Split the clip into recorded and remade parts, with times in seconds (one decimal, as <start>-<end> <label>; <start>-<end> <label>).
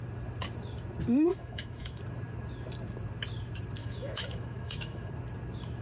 0.0-1.3 recorded; 1.3-2.0 remade; 2.0-3.8 recorded; 3.8-5.1 remade; 5.1-5.8 recorded